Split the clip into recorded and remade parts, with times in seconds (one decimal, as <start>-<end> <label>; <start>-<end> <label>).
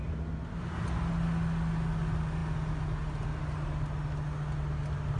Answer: 0.0-5.2 recorded